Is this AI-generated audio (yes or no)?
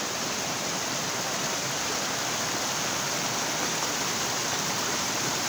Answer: no